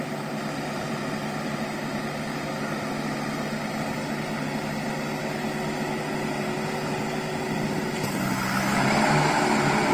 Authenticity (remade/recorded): recorded